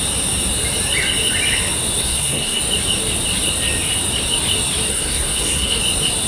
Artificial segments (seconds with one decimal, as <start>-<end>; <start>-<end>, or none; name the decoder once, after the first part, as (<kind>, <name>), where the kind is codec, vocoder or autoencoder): 2.0-2.6 (codec, SNAC); 4.9-5.8